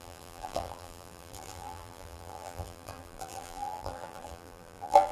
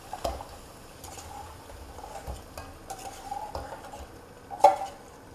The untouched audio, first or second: second